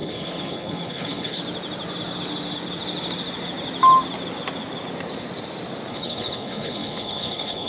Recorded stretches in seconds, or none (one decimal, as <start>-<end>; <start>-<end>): 1.4-5.9